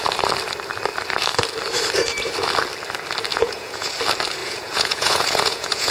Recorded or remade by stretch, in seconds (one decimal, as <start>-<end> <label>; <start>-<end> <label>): 0.0-3.3 recorded; 3.3-3.9 remade; 3.9-4.4 recorded; 4.4-5.9 remade